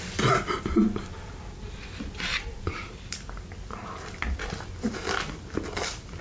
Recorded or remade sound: recorded